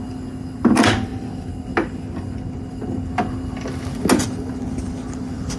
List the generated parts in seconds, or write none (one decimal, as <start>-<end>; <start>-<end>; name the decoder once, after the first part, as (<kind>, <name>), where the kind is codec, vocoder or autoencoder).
none